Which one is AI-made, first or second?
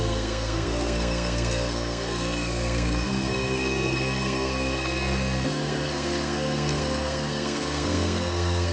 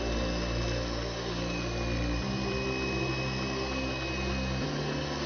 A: first